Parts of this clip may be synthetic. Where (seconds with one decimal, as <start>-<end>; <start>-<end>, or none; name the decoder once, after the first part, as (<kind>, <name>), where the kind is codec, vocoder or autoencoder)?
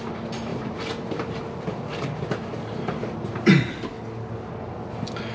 0.5-3.7 (vocoder, BigVGAN v2)